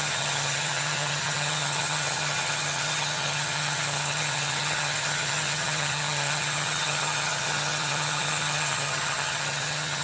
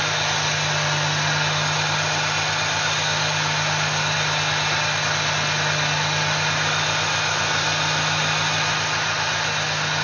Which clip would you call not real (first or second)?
first